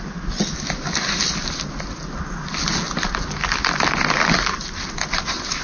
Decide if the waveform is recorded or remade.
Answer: recorded